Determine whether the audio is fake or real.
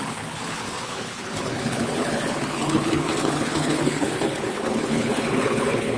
fake